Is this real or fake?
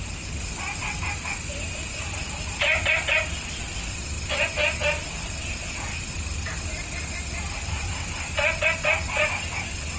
real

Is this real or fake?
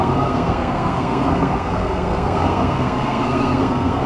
fake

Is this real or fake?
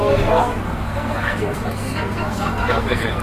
fake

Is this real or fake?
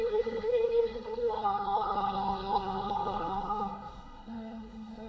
fake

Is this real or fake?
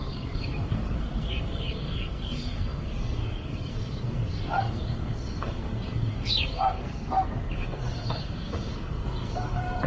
fake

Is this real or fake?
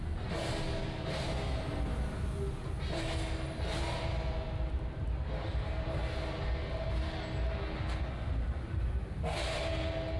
real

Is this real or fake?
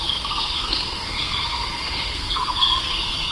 fake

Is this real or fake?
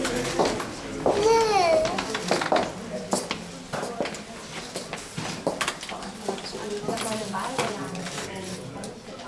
real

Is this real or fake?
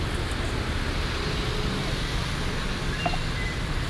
real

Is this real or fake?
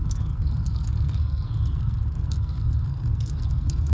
fake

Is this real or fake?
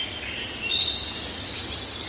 real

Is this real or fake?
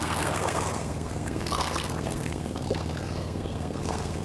fake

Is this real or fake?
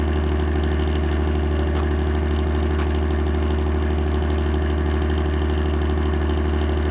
real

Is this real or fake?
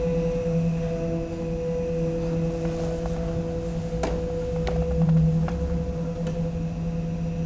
real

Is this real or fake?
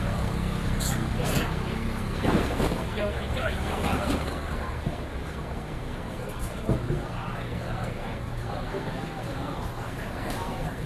fake